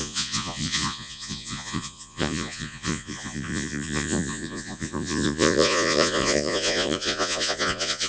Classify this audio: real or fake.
fake